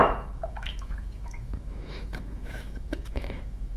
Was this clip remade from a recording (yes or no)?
yes